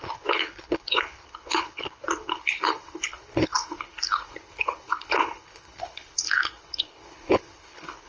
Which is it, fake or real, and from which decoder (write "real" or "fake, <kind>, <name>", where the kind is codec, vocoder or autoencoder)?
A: fake, codec, HILCodec